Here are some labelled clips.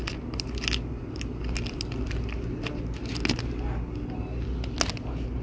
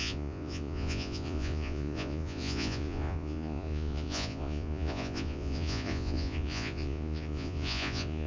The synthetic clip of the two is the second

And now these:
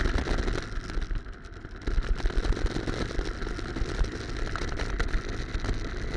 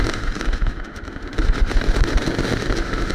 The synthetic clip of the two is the second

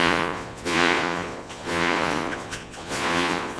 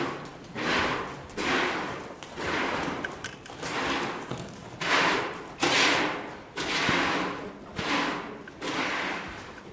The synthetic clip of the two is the first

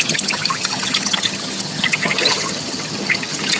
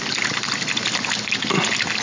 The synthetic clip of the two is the first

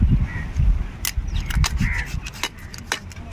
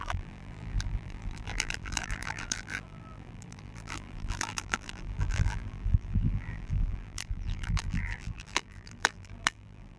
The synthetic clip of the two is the second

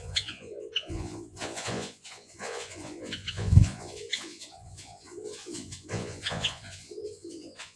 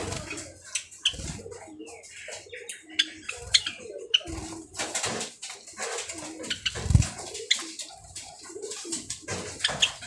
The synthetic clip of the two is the first